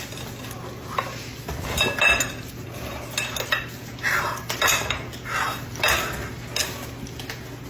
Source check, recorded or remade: recorded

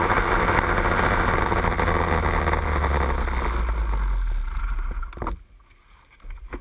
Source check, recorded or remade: recorded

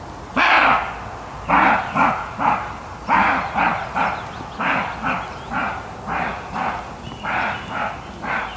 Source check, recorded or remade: recorded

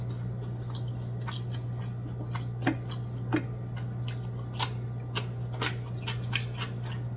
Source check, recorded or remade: recorded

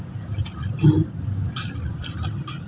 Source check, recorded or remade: recorded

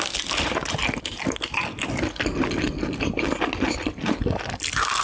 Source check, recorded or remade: recorded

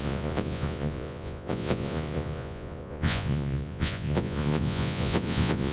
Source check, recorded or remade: remade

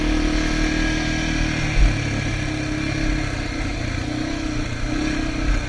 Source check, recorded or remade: recorded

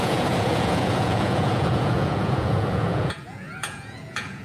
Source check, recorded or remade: remade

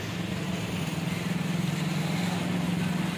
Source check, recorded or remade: recorded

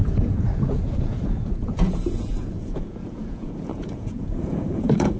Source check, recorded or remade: remade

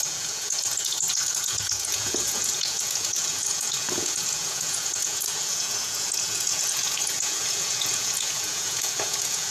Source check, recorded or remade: remade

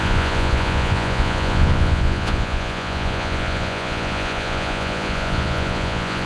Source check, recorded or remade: remade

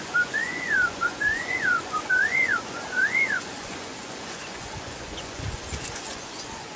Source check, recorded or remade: remade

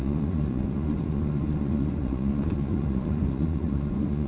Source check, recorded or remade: remade